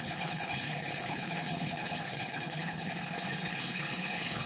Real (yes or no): no